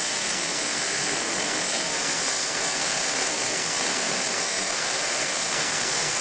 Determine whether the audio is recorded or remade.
remade